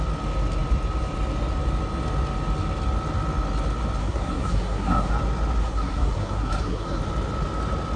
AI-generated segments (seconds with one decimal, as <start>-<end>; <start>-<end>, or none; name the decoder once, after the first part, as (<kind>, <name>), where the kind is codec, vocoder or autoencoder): 4.0-5.1 (codec, SNAC); 5.6-7.0